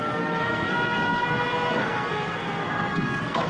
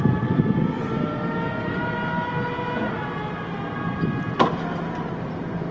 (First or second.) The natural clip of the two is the second